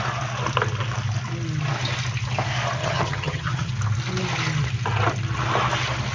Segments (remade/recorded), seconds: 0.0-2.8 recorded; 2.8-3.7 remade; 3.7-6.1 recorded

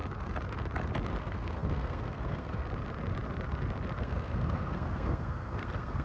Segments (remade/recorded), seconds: 0.0-1.2 recorded; 1.2-2.6 remade; 2.6-4.0 recorded; 4.0-6.0 remade

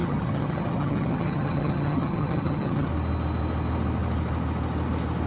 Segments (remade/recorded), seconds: 0.0-2.9 remade; 2.9-5.3 recorded

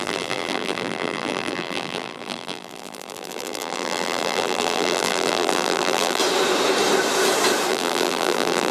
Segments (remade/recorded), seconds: 0.0-6.2 remade; 6.2-7.7 recorded; 7.7-8.7 remade

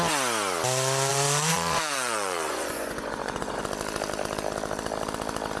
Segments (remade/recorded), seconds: 0.0-1.1 recorded; 1.1-3.6 remade; 3.6-5.6 recorded

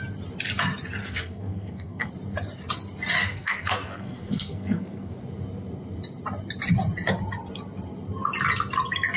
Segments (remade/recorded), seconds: 0.0-1.0 recorded; 1.0-2.1 remade; 2.1-3.2 recorded; 3.2-5.1 remade; 5.1-9.2 recorded